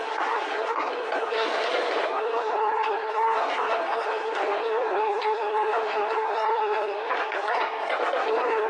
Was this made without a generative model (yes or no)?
no